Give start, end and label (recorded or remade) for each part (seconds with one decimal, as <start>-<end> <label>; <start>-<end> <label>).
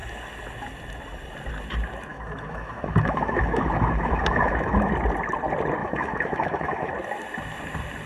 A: 0.0-2.1 recorded; 2.1-4.9 remade; 4.9-5.8 recorded; 5.8-6.9 remade; 6.9-8.1 recorded